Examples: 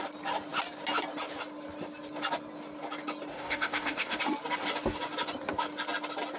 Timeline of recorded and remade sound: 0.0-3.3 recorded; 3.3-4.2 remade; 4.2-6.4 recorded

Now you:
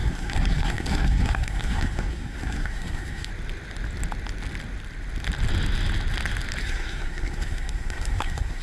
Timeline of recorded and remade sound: 0.0-3.3 remade; 3.3-6.6 recorded; 6.6-8.6 remade